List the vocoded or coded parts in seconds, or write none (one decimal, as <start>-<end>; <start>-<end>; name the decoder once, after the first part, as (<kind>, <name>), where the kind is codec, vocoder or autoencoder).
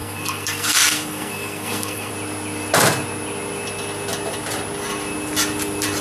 0.0-2.1 (codec, SNAC)